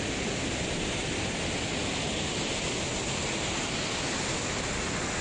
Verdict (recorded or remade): recorded